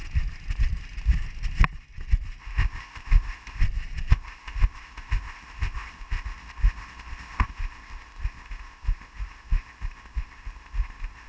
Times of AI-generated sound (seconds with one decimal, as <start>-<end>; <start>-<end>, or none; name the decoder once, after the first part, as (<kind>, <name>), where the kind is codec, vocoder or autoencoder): 2.4-3.6 (codec, ZipCodec); 4.1-11.3